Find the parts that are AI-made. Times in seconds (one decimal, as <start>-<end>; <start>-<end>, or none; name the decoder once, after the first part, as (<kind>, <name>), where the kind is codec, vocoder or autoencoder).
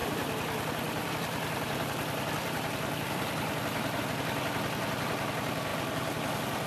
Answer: 0.0-4.0 (vocoder, BigVGAN v2)